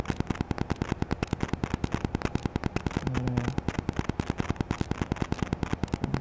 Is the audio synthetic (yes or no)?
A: no